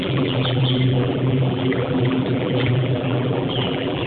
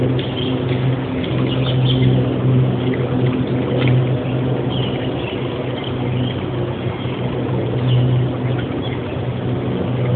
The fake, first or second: first